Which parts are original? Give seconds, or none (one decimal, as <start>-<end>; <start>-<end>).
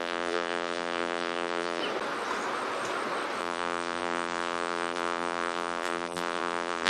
1.8-3.4